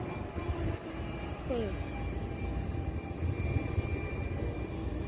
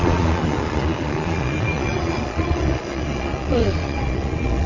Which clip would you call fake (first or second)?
second